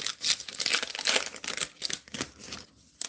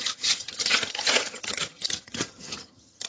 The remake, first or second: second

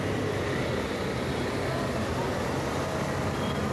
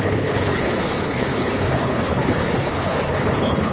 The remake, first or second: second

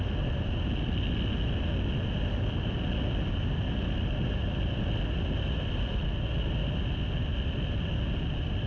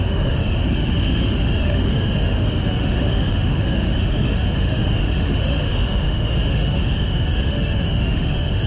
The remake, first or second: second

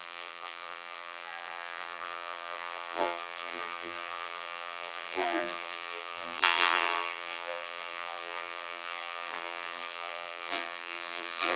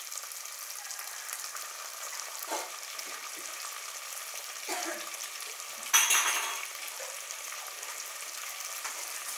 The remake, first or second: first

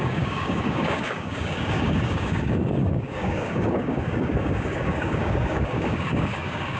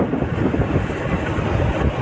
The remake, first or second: first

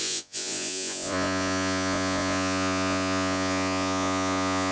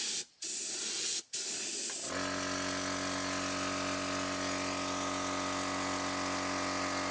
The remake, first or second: first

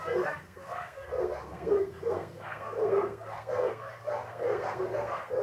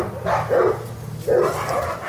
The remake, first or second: first